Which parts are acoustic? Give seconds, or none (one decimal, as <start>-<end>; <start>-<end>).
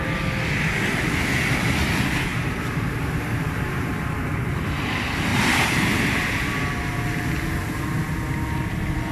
0.0-2.3; 3.9-5.3; 6.2-9.1